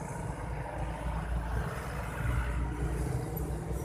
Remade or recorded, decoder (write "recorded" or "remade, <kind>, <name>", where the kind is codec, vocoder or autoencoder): recorded